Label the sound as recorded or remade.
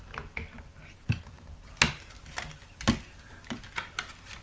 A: recorded